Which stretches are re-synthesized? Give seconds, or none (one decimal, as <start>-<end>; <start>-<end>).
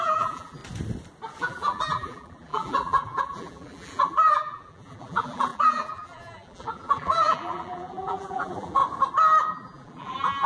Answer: 0.0-0.6; 1.4-8.8; 9.5-10.5